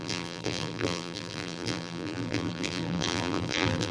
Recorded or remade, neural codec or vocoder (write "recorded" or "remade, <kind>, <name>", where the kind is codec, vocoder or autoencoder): remade, vocoder, BigVGAN v2